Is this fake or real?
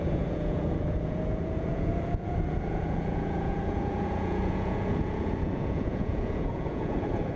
fake